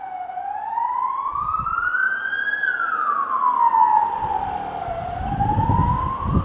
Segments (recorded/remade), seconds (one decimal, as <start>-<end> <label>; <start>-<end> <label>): 0.0-6.4 recorded